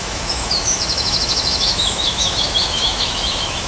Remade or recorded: remade